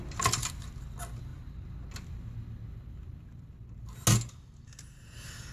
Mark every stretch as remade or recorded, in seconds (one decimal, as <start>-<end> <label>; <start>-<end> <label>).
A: 0.0-5.5 recorded